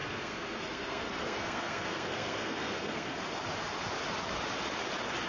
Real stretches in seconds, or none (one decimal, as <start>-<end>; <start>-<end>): 3.2-5.3